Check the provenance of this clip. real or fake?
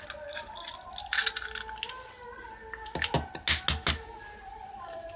real